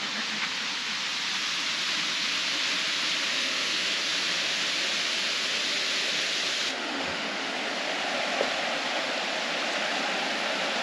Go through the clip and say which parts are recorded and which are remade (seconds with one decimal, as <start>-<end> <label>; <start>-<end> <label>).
0.0-3.3 recorded; 3.3-3.9 remade; 3.9-6.7 recorded; 6.7-7.5 remade; 7.5-10.8 recorded